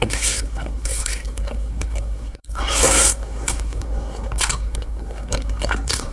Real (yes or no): no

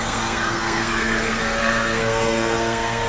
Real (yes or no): no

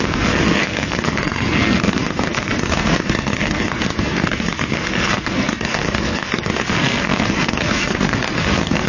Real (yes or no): no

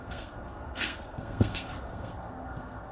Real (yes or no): no